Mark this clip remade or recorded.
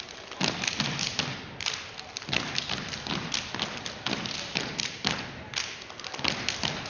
recorded